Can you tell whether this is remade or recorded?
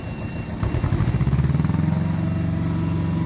recorded